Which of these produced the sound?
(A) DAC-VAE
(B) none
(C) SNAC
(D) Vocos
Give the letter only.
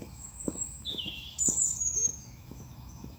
A